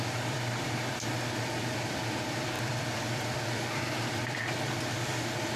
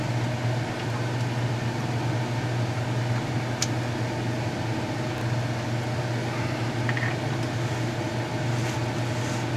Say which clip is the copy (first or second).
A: first